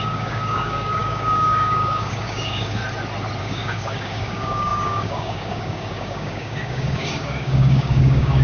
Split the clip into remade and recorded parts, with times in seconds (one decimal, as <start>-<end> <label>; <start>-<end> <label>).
0.0-2.8 remade; 2.8-3.4 recorded; 3.4-8.4 remade